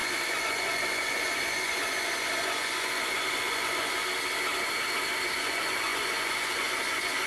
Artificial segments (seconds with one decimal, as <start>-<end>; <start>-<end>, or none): 0.0-4.0; 5.3-7.3